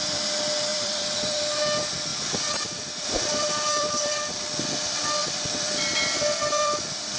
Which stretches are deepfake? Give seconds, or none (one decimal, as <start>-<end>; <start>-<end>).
0.7-1.4; 2.1-4.1; 5.2-7.2